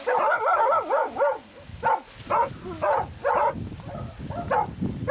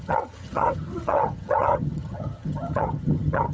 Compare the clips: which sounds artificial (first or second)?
second